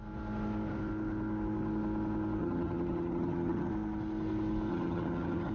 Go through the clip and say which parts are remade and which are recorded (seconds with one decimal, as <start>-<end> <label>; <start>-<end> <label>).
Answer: 0.0-2.4 recorded; 2.4-3.7 remade; 3.7-4.7 recorded; 4.7-5.5 remade